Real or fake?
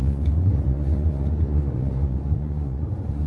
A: fake